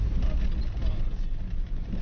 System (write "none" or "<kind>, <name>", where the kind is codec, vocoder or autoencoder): none